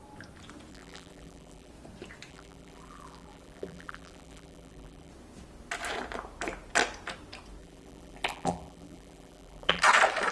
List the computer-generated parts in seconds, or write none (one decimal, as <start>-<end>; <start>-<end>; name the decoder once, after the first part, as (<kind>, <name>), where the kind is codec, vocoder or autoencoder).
0.7-1.7 (vocoder, BigVGAN v2); 2.3-5.1; 7.6-9.8